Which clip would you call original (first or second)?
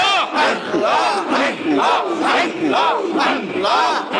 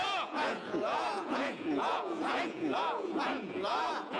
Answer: first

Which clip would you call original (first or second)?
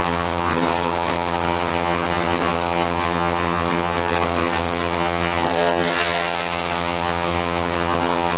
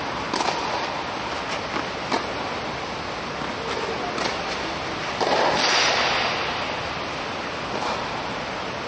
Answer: second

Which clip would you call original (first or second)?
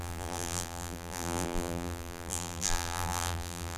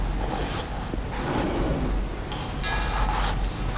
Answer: second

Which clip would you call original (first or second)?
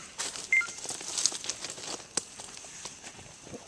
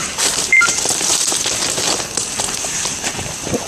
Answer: first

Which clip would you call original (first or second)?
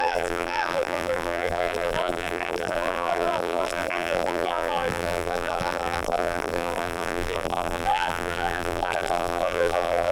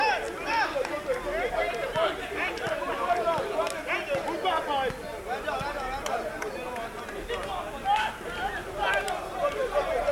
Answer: second